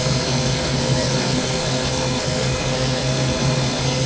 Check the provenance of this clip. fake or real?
fake